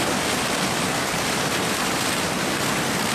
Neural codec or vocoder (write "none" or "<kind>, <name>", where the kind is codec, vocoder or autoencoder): none